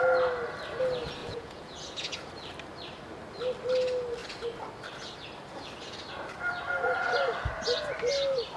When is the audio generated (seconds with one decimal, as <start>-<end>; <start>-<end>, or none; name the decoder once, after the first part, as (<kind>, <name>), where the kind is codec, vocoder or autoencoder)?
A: 1.2-2.3 (vocoder, Vocos)